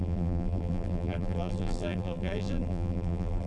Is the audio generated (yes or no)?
yes